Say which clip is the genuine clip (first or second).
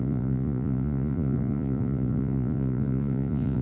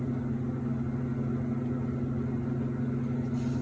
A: second